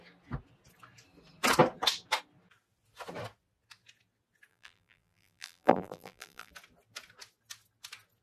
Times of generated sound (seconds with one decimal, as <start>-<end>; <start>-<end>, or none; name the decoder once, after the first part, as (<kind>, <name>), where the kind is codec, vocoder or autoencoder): 4.5-6.5 (vocoder, BigVGAN v2)